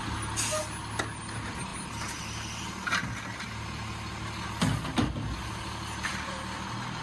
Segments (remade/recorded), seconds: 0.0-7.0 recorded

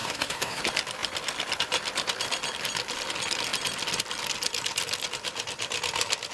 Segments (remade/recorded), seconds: 0.0-0.6 remade; 0.6-6.3 recorded

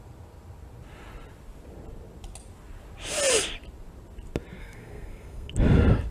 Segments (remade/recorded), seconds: 0.0-4.6 recorded; 4.6-5.5 remade; 5.5-6.1 recorded

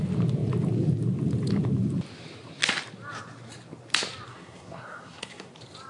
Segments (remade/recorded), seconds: 0.0-4.3 recorded; 4.3-5.5 remade; 5.5-5.9 recorded

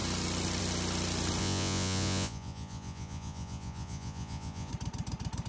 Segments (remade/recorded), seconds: 0.0-1.4 recorded; 1.4-4.7 remade; 4.7-5.5 recorded